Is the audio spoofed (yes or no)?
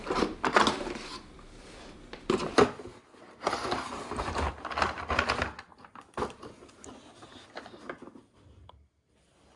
no